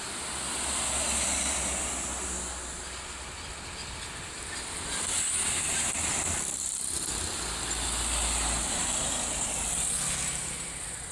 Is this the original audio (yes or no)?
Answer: yes